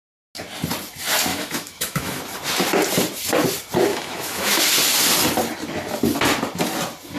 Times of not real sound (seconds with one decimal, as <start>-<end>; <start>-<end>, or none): 1.3-2.2; 3.9-4.6